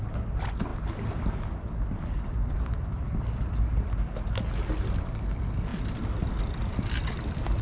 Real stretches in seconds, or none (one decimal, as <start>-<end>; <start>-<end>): 0.0-7.6